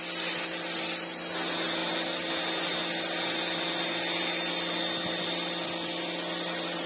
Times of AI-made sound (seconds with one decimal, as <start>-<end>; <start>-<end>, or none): none